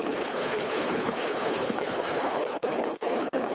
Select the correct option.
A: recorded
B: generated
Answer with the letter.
B